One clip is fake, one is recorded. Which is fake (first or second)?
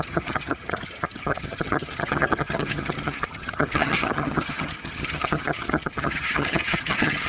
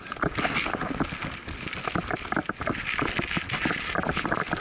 first